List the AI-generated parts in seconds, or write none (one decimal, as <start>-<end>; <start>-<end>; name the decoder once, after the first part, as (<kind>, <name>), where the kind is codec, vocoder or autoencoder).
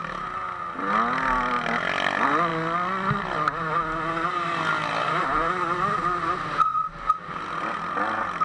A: none